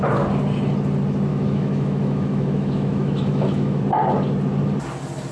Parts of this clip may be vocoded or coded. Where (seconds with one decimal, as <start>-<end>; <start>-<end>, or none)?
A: 1.3-3.8